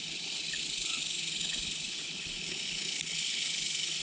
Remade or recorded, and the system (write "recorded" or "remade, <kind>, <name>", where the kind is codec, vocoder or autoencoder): remade, codec, HILCodec